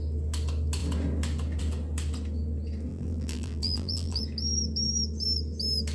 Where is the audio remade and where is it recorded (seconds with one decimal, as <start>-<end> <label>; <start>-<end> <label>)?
0.0-2.9 recorded; 2.9-4.2 remade; 4.2-5.9 recorded